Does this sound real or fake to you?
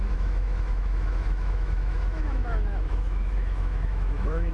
fake